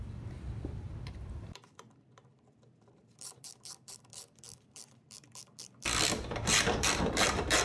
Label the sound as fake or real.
fake